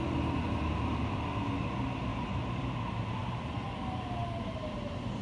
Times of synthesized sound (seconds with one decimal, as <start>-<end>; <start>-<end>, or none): 2.1-2.7